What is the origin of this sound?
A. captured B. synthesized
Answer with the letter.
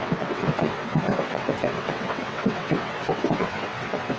B